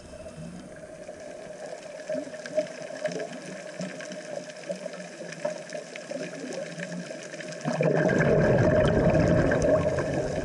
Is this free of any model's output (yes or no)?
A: yes